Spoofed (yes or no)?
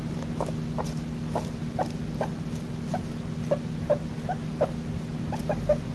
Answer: no